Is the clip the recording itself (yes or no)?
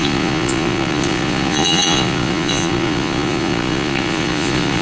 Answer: no